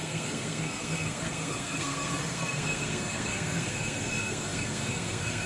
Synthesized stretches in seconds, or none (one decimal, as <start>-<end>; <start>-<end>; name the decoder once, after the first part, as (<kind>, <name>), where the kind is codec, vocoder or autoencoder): 0.0-5.5 (codec, SNAC)